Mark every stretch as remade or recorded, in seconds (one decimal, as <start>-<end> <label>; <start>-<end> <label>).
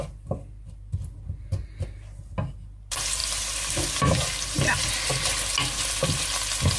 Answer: 0.0-6.8 recorded